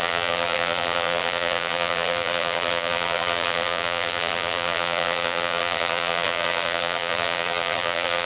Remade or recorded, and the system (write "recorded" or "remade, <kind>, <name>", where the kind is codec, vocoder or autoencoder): remade, vocoder, BigVGAN v2